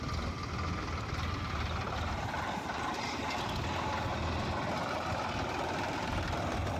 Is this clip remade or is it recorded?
recorded